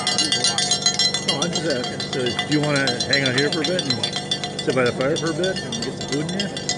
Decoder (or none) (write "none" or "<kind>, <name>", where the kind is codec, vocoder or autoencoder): none